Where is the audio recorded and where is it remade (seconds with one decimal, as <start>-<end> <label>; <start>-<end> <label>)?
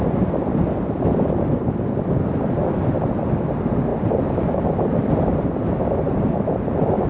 0.0-3.9 recorded; 3.9-5.3 remade; 5.3-7.1 recorded